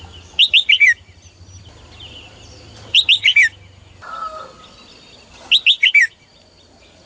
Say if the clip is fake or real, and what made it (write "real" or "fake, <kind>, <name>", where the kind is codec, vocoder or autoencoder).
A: real